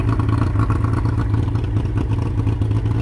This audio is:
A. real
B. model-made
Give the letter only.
A